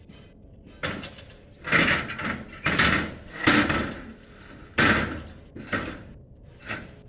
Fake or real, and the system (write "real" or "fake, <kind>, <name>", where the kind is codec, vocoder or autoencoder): real